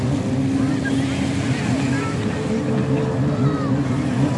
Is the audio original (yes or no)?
yes